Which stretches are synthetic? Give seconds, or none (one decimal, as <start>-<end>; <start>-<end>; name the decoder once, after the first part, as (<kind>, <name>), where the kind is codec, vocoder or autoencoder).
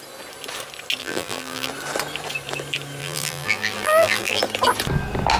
1.0-1.7 (vocoder, BigVGAN v2); 3.0-4.4